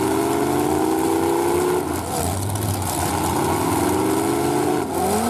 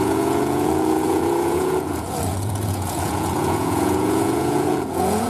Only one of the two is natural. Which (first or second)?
first